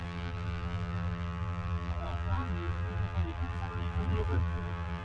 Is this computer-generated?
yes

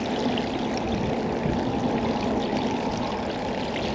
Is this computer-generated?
no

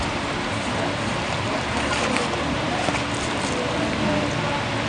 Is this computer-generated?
yes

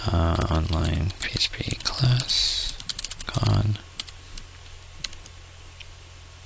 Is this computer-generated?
no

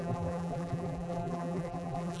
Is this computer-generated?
yes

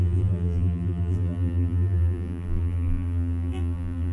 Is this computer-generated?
yes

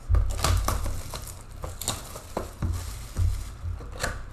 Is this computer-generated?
no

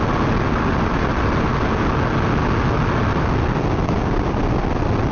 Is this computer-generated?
no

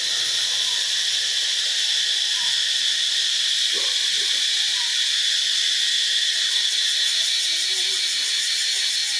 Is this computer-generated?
no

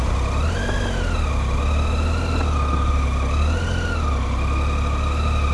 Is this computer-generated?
no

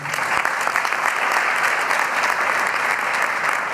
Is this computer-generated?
no